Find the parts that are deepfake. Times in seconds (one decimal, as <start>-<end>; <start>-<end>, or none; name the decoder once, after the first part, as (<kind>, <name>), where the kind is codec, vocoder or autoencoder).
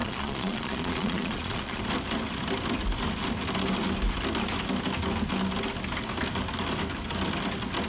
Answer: 0.0-1.8 (vocoder, Vocos)